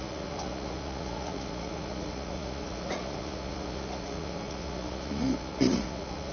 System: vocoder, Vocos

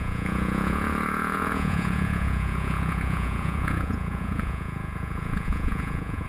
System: vocoder, Vocos